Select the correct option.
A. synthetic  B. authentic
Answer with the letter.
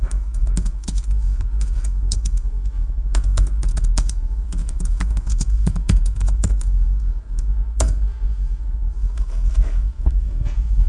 A